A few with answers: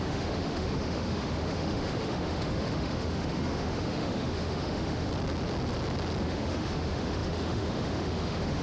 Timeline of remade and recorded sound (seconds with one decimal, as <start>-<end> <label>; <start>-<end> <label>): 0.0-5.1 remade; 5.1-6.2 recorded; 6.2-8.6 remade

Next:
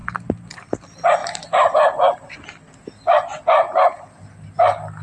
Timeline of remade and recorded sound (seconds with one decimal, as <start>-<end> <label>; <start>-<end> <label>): 0.0-0.7 remade; 0.7-1.2 recorded; 1.2-4.2 remade; 4.2-5.0 recorded

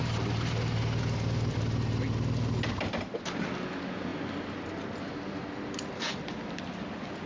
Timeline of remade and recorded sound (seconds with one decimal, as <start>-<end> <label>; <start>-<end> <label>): 0.0-7.3 recorded

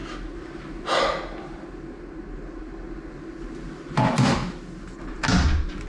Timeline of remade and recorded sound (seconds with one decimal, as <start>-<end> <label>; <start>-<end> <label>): 0.0-5.9 recorded

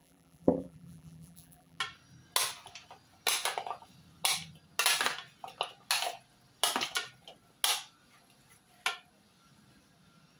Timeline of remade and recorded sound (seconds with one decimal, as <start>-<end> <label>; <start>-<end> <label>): 0.0-1.8 remade; 1.8-10.4 recorded

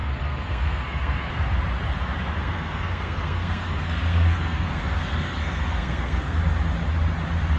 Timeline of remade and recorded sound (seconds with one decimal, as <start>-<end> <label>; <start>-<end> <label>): 0.0-1.3 remade; 1.3-2.4 recorded; 2.4-6.4 remade; 6.4-7.6 recorded